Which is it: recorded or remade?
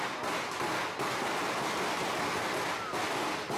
recorded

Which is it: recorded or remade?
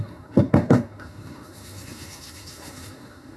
remade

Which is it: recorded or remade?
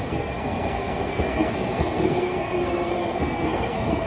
remade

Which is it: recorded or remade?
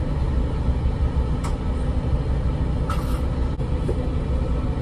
recorded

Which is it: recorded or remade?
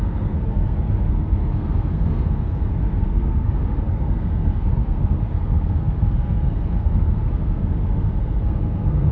remade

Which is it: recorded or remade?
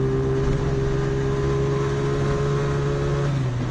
recorded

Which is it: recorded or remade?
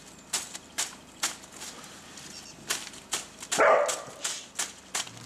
recorded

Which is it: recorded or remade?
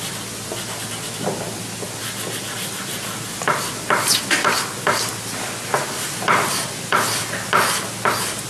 recorded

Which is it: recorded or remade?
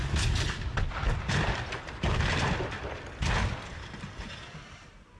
recorded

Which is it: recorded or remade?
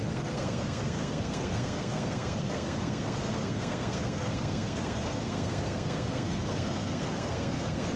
remade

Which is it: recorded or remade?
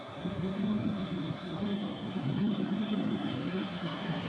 remade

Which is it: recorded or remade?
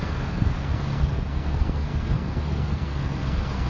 remade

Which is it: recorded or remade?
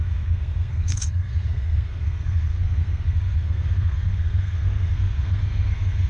remade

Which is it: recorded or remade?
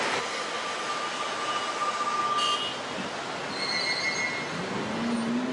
recorded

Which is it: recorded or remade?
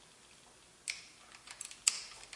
recorded